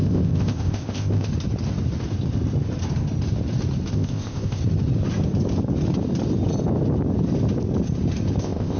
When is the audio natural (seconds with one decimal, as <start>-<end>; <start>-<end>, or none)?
1.3-3.9; 4.6-8.4